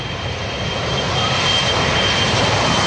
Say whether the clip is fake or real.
real